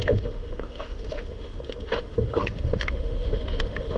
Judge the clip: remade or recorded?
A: remade